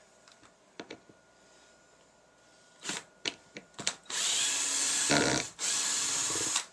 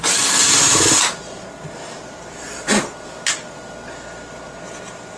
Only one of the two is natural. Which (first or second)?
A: second